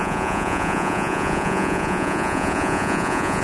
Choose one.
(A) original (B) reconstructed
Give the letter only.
B